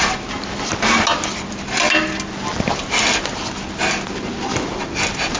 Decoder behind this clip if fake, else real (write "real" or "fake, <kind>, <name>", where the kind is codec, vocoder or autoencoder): real